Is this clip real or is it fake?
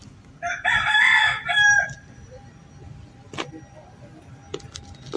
real